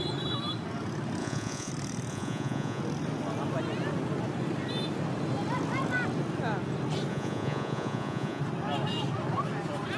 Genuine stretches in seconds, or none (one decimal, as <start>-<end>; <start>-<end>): 0.0-1.2; 1.7-2.1; 2.8-7.1; 8.4-10.0